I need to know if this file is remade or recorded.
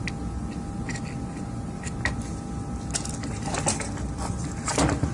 recorded